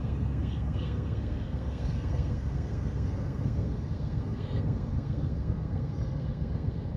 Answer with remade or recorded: remade